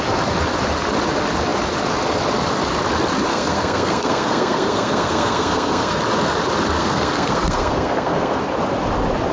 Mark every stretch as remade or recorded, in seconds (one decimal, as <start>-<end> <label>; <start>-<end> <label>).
0.0-3.3 recorded; 3.3-6.0 remade; 6.0-6.8 recorded; 6.8-8.4 remade; 8.4-9.3 recorded